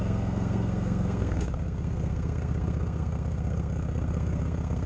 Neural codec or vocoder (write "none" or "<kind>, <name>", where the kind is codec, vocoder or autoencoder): codec, SNAC